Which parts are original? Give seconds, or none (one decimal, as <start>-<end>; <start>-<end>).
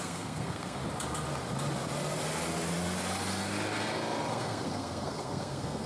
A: 0.8-4.3